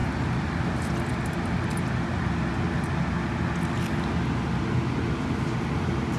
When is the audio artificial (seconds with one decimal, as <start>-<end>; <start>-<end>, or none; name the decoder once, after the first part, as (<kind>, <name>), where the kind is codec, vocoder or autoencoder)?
none